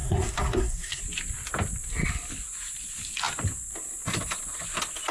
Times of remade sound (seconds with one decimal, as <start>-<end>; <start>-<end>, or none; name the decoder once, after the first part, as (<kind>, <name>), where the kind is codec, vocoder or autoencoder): 0.0-1.0 (codec, SNAC)